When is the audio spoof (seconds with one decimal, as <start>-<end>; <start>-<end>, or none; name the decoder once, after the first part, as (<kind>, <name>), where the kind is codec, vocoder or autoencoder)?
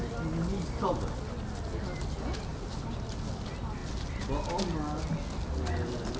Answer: none